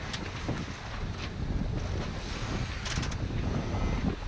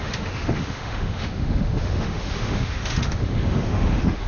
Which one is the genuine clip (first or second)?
first